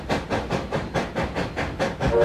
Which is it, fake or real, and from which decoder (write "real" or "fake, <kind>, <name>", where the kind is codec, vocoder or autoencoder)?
real